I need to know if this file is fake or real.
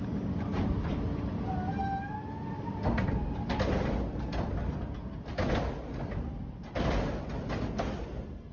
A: real